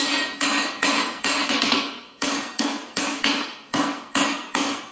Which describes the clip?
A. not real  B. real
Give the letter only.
A